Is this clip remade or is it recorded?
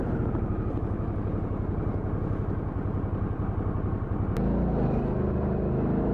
recorded